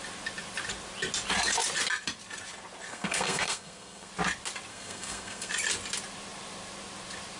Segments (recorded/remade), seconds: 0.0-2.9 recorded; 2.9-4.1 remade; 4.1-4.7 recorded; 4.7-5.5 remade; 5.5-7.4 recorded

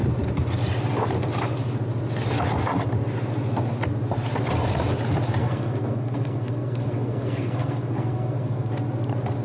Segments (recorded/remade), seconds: 0.0-5.4 recorded; 5.4-8.7 remade; 8.7-9.4 recorded

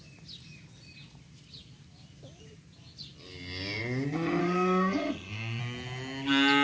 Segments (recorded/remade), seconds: 0.0-4.4 recorded; 4.4-5.6 remade; 5.6-6.6 recorded

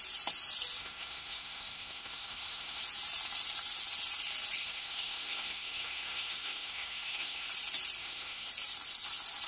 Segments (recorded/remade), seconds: 0.0-0.8 recorded; 0.8-2.8 remade; 2.8-4.6 recorded; 4.6-7.5 remade; 7.5-8.0 recorded; 8.0-8.5 remade; 8.5-9.5 recorded

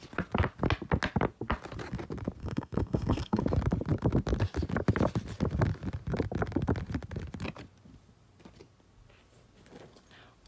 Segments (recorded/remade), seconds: 0.0-2.4 recorded; 2.4-3.4 remade; 3.4-10.5 recorded

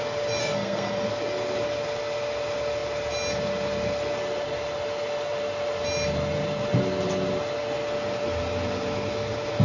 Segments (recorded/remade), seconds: 0.0-0.4 recorded; 0.4-1.1 remade; 1.1-9.6 recorded

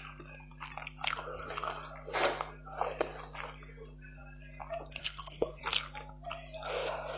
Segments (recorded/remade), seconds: 0.0-5.0 recorded; 5.0-5.6 remade; 5.6-7.2 recorded